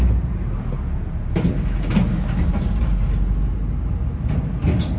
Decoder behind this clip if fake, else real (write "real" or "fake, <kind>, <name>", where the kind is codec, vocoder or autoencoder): real